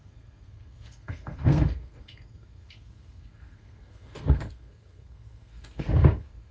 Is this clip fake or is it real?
fake